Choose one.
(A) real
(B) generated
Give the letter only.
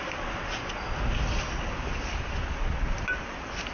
A